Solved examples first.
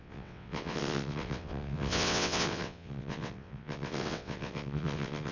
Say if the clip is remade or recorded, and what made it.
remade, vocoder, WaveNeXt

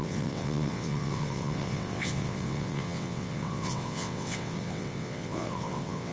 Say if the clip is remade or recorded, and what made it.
remade, vocoder, WaveNeXt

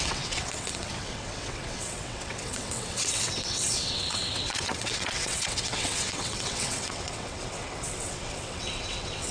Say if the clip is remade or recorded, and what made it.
remade, vocoder, WaveNeXt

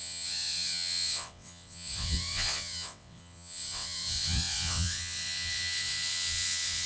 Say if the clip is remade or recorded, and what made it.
remade, vocoder, WaveNeXt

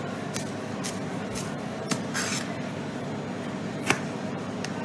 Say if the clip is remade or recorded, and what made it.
recorded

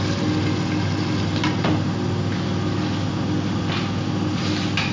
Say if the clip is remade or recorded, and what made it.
recorded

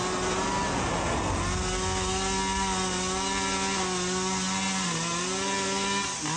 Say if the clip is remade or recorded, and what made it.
recorded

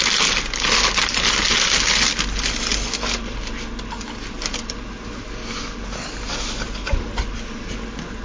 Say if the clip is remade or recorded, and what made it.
recorded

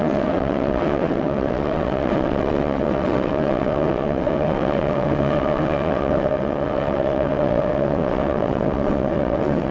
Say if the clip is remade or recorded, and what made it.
remade, vocoder, WaveNeXt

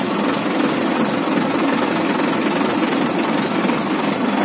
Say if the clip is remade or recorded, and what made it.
recorded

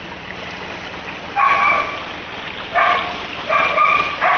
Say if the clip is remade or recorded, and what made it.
recorded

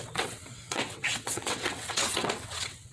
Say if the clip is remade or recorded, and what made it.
remade, vocoder, WaveNeXt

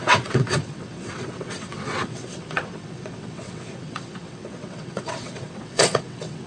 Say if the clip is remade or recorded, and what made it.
remade, vocoder, WaveNeXt